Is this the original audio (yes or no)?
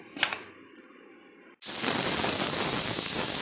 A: yes